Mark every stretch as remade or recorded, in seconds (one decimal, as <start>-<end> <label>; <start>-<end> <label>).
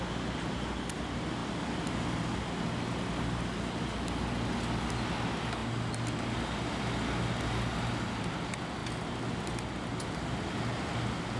0.0-11.4 recorded